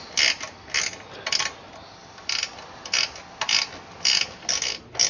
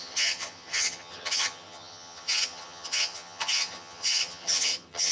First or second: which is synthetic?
second